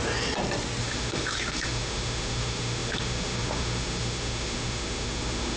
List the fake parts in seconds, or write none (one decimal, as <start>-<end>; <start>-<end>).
0.8-5.6

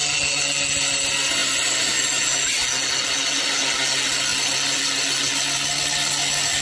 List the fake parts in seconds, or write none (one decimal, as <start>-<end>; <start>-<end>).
none

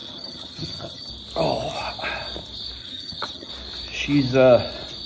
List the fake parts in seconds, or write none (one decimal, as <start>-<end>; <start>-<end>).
0.0-1.1; 2.8-3.5

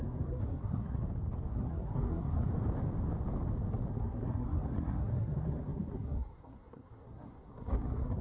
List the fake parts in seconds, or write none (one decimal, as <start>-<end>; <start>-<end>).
0.0-1.0; 1.5-2.5; 3.9-8.2